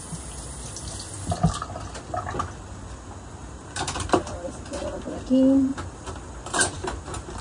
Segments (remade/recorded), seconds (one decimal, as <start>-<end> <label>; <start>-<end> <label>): 0.0-3.4 recorded; 3.4-4.5 remade; 4.5-5.7 recorded; 5.7-7.4 remade